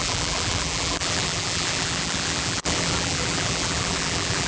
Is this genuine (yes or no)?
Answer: no